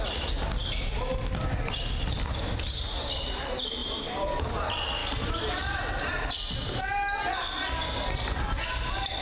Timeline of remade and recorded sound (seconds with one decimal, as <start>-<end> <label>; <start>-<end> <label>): 0.0-3.8 recorded; 3.8-4.5 remade; 4.5-9.2 recorded